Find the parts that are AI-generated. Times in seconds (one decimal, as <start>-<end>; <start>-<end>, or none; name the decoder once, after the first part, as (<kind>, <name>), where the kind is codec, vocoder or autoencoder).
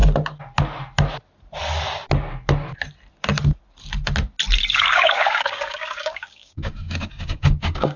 4.7-8.0 (codec, DAC)